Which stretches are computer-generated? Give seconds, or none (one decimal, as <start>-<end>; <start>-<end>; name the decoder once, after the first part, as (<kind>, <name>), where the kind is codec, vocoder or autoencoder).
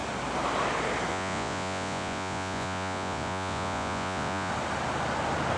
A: 1.1-4.5 (vocoder, Vocos)